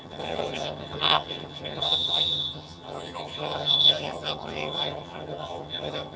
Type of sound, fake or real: fake